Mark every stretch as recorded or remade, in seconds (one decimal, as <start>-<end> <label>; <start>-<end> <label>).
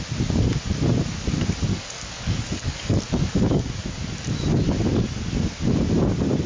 0.0-1.7 recorded; 1.7-4.3 remade; 4.3-4.9 recorded; 4.9-5.5 remade; 5.5-6.5 recorded